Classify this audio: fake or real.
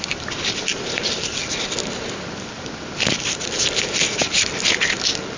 real